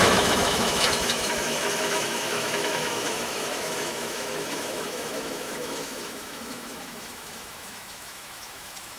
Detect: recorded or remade remade